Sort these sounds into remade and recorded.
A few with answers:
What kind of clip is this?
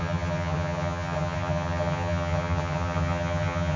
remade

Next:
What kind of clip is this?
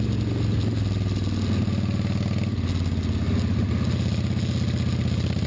recorded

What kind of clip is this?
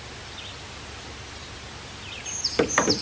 recorded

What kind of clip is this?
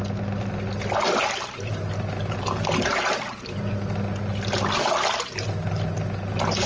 recorded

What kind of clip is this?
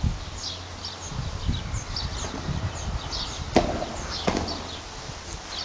recorded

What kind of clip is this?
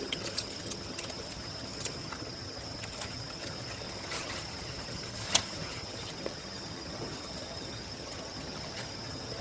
remade